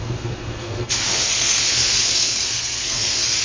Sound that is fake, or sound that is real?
fake